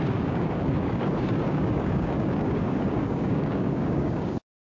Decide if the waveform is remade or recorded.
remade